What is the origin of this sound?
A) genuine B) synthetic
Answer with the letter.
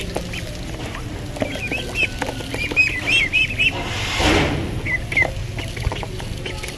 A